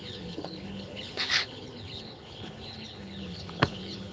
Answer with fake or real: fake